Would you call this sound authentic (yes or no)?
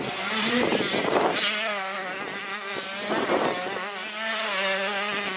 yes